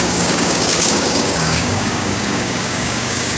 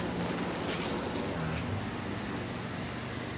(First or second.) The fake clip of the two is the first